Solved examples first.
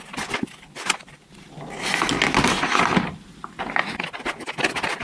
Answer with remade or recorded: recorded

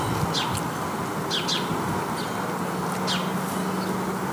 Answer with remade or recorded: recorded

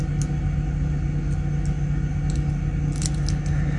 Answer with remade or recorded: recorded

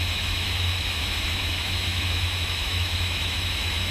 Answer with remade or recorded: remade